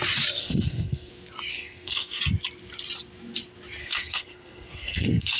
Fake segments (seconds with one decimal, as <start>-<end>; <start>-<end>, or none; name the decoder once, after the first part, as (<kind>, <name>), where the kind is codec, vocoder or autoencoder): 0.4-1.1 (codec, SNAC); 1.5-2.2; 3.8-5.4